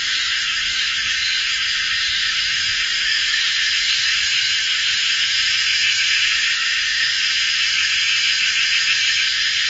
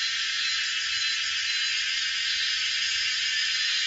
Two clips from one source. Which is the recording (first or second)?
second